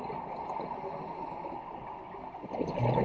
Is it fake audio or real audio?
real